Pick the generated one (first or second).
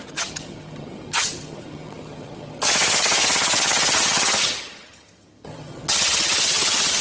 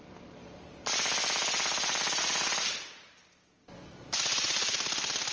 first